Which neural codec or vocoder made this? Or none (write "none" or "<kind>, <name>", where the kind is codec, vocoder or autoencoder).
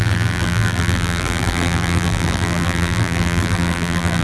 vocoder, BigVGAN v2